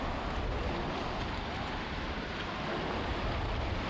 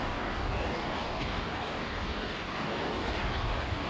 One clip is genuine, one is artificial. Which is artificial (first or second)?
second